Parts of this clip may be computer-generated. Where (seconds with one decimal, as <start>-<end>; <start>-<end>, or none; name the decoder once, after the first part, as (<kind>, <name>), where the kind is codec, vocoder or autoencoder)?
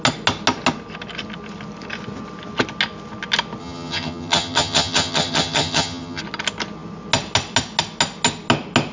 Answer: 3.6-6.2 (vocoder, HiFi-GAN)